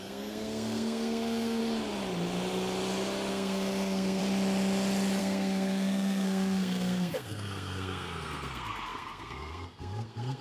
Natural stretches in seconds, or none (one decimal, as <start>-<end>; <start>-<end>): 1.6-3.3; 4.2-5.2